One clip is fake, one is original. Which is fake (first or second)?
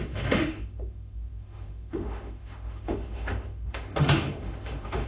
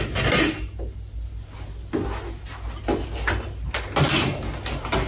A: first